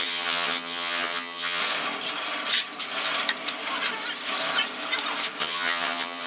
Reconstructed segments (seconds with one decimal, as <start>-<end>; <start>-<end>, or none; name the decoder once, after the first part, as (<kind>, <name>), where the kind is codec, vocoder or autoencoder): 0.0-1.6 (vocoder, HiFi-GAN); 5.4-6.3